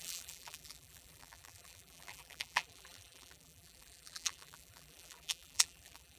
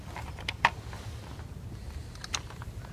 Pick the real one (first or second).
second